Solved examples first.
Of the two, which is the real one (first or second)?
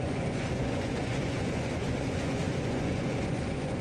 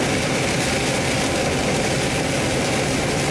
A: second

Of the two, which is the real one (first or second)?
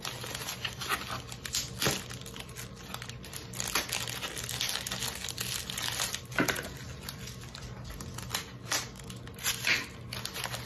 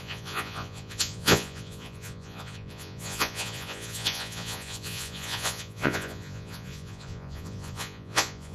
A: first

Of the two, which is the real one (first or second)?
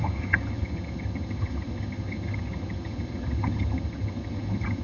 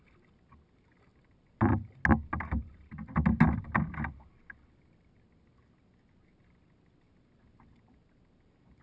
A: second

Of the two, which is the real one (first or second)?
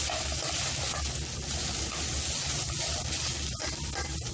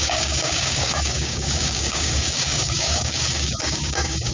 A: first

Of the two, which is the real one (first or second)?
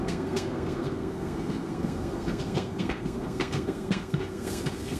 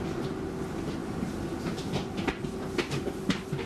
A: second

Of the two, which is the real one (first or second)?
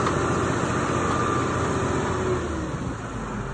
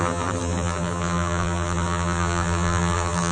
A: first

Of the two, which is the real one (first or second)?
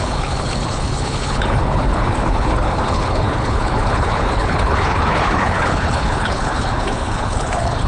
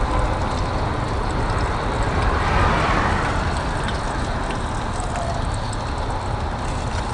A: second